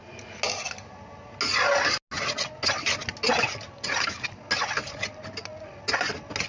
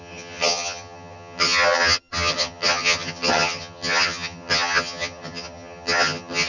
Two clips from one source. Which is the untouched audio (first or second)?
first